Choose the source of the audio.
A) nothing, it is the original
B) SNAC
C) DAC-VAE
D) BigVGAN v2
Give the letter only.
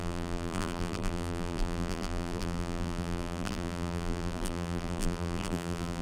D